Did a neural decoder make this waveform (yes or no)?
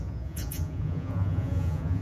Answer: yes